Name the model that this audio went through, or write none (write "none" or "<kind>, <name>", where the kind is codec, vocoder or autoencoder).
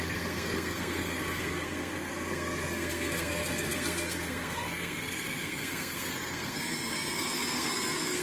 codec, SNAC